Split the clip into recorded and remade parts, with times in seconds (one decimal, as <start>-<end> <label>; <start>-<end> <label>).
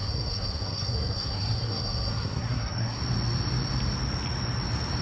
0.0-3.0 remade; 3.0-5.0 recorded